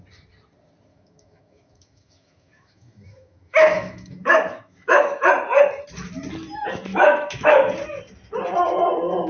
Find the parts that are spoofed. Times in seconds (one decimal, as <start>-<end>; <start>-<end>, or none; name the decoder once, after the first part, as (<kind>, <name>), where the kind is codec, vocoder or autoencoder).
0.9-5.3 (autoencoder, DAC-VAE); 6.9-7.7